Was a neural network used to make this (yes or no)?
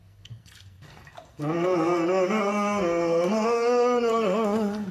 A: yes